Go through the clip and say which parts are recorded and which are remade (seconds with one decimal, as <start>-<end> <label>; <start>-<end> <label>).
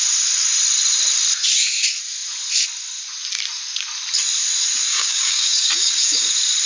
0.0-4.9 recorded; 4.9-6.3 remade; 6.3-6.7 recorded